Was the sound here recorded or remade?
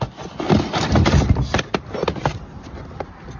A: recorded